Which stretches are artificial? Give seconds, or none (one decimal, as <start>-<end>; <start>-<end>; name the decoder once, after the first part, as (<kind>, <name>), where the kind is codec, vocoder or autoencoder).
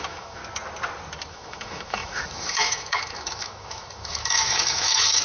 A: 0.0-0.4 (autoencoder, DAC-VAE); 1.3-5.2